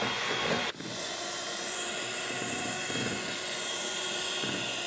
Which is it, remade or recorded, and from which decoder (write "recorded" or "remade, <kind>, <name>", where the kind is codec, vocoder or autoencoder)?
remade, vocoder, Vocos